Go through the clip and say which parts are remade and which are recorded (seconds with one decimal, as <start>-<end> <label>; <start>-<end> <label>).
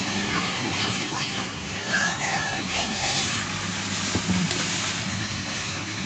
0.0-3.4 remade; 3.4-5.1 recorded; 5.1-6.1 remade